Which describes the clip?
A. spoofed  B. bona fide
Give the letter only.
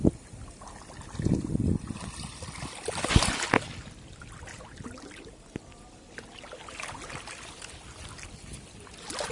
B